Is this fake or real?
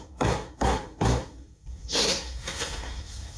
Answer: fake